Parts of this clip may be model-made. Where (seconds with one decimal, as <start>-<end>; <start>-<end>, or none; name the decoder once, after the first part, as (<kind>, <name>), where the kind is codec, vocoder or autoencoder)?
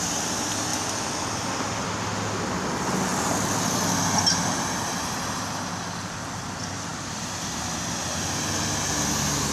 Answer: 3.1-3.6 (vocoder, BigVGAN v2); 6.9-7.6